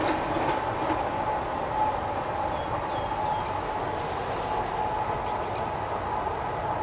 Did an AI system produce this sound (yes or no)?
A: no